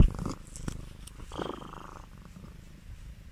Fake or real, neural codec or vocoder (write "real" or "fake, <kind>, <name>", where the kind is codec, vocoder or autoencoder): real